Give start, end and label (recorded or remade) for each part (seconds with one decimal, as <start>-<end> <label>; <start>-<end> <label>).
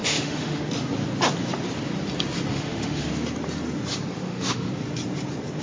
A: 0.0-0.6 remade; 0.6-2.5 recorded; 2.5-3.1 remade; 3.1-4.1 recorded; 4.1-4.7 remade; 4.7-5.6 recorded